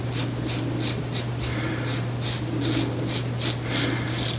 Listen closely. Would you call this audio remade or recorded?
recorded